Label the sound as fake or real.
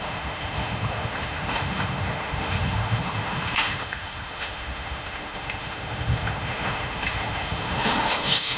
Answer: fake